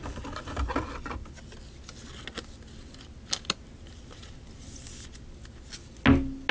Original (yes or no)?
yes